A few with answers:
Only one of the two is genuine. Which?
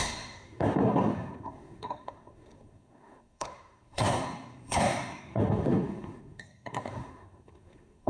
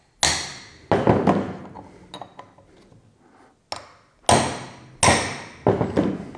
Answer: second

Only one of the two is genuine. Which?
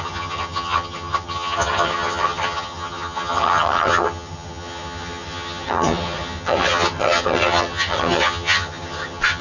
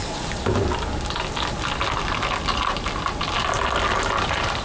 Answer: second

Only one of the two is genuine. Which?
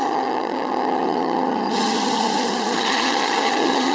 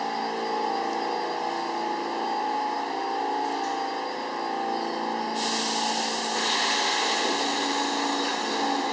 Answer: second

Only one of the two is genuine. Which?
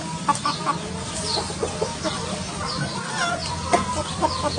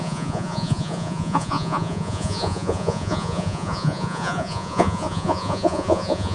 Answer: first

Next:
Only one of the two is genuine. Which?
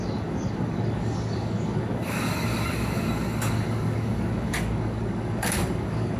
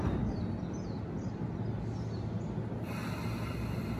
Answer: second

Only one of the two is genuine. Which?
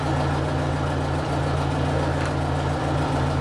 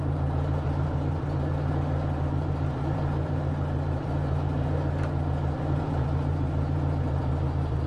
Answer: first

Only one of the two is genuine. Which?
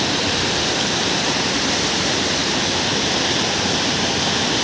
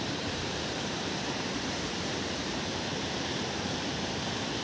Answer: first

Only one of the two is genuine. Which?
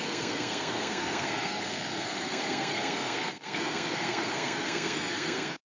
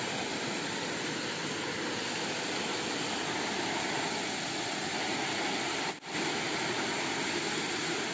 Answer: second